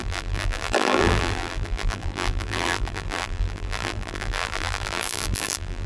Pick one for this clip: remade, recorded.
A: remade